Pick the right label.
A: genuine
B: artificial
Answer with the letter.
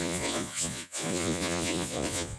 B